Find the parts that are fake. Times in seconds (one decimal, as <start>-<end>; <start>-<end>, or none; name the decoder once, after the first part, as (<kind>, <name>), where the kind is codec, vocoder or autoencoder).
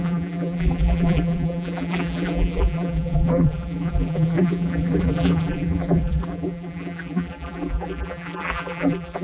0.0-9.2 (vocoder, BigVGAN v2)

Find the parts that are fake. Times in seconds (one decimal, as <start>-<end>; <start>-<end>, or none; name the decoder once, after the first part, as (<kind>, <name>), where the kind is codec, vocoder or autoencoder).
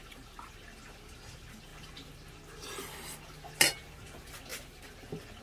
none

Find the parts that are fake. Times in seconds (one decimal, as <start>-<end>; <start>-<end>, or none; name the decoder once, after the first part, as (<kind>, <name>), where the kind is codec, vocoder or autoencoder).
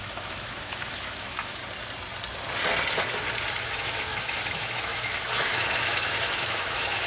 0.0-1.6 (autoencoder, DAC-VAE); 3.6-7.1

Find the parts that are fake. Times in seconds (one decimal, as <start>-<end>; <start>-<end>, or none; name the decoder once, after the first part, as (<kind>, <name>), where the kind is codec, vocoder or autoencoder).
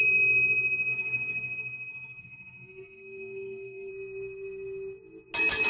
0.9-3.9 (codec, SNAC)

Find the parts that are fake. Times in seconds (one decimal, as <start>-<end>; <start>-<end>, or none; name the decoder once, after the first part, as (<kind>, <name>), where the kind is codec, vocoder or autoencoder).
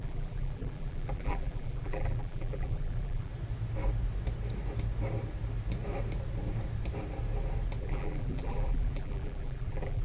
0.0-3.3 (vocoder, BigVGAN v2); 7.8-10.0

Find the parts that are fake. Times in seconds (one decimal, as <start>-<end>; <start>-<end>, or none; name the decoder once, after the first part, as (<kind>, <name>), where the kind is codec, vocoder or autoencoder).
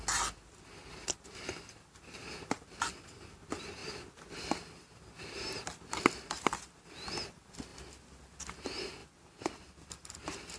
7.7-8.4 (vocoder, BigVGAN v2); 9.0-10.6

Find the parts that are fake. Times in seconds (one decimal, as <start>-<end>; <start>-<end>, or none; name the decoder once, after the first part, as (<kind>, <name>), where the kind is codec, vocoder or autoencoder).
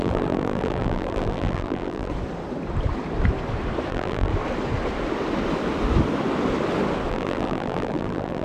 0.0-2.1 (vocoder, BigVGAN v2); 3.9-4.3; 7.1-8.4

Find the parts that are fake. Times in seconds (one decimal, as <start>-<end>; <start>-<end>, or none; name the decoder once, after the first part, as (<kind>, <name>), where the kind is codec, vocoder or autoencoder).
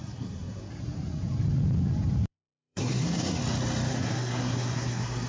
0.0-0.7 (codec, SNAC); 2.3-3.4; 3.9-5.3